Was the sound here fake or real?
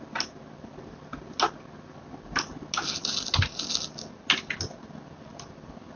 real